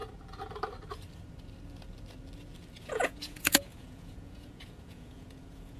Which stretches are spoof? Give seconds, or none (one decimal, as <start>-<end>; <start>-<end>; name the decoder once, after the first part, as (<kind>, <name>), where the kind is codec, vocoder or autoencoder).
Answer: 2.9-5.8 (vocoder, Vocos)